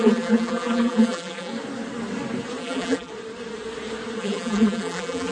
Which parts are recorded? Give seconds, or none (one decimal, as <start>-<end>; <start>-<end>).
1.5-2.6; 3.1-4.2